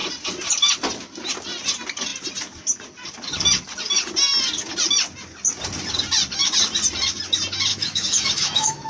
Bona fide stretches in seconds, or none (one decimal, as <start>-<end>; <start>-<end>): 0.0-7.7